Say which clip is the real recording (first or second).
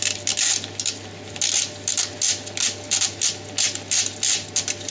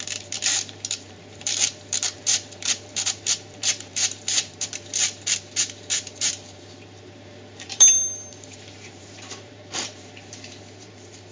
first